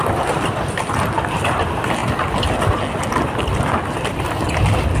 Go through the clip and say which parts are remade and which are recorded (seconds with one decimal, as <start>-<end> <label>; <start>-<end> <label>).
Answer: 0.0-5.0 recorded